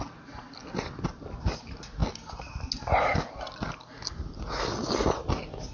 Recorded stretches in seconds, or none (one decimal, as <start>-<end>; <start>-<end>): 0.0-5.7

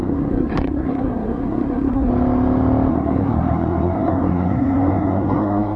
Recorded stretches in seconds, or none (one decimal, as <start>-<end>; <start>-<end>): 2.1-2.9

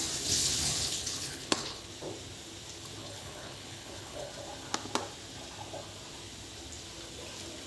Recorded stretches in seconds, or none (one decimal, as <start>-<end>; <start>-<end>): 0.0-0.4; 1.9-3.0; 4.3-7.7